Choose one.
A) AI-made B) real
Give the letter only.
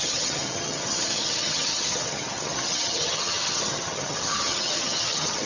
A